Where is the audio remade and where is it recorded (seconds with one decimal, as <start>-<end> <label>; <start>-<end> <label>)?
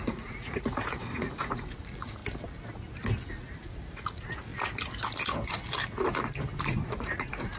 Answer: 0.0-2.2 remade; 2.2-3.3 recorded; 3.3-4.5 remade; 4.5-6.6 recorded; 6.6-7.6 remade